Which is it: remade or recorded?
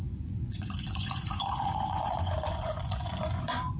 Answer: remade